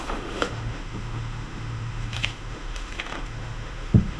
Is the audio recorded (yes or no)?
no